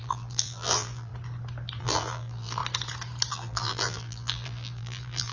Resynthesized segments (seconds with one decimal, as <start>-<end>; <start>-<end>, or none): 0.0-1.1; 1.8-2.6; 3.3-5.3